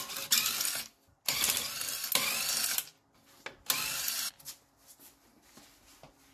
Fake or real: real